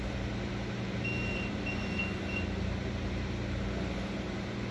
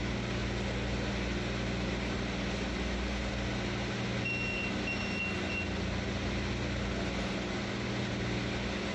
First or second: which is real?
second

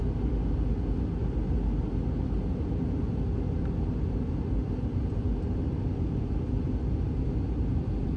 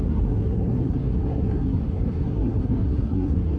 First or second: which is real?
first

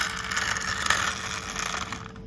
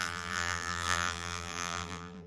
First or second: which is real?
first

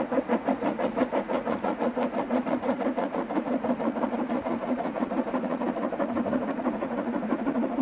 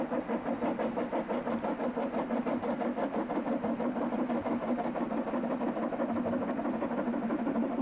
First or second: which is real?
second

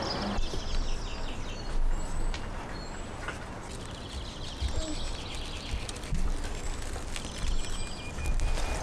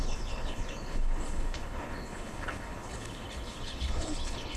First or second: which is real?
first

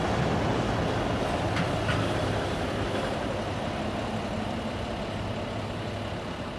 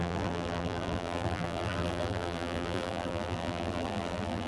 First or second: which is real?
first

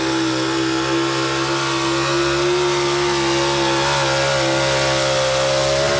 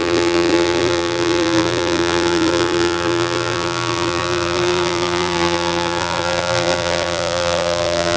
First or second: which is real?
first